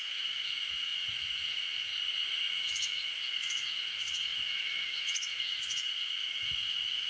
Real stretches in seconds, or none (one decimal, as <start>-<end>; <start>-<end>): 1.9-2.5